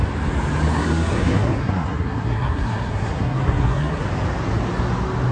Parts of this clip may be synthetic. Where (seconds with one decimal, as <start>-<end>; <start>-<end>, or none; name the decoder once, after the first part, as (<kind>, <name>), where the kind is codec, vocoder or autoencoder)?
0.8-4.0 (codec, SNAC)